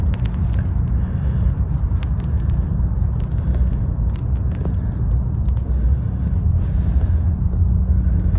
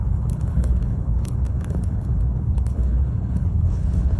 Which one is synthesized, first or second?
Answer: second